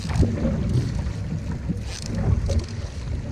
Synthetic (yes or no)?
no